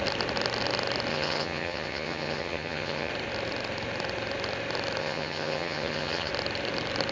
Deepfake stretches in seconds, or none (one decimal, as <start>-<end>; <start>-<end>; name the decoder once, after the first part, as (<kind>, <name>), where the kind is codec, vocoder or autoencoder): 1.1-3.1 (vocoder, HiFi-GAN); 5.0-6.3